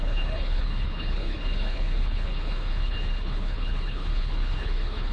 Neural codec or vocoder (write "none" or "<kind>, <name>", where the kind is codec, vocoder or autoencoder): codec, HILCodec